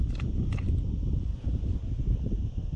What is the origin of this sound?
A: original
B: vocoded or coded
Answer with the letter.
A